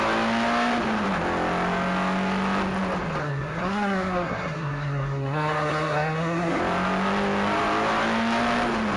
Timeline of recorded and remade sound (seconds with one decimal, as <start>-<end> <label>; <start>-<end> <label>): 0.0-3.2 recorded; 3.2-6.6 remade; 6.6-9.0 recorded